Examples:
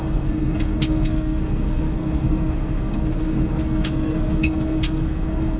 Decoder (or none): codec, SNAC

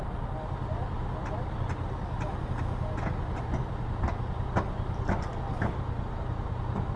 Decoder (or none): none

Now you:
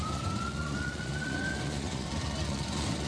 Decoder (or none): vocoder, Vocos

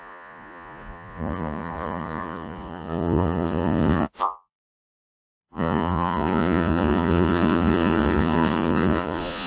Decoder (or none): vocoder, Vocos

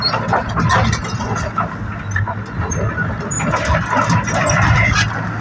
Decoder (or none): none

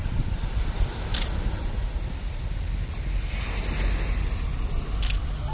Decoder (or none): none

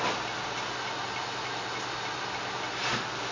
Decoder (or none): none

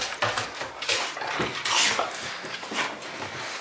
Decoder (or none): none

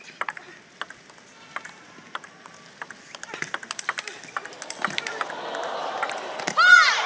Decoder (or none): none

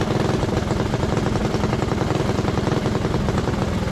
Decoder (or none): none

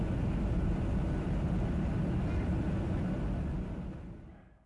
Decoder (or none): none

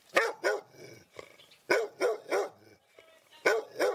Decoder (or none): none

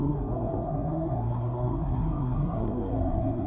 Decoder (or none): codec, SNAC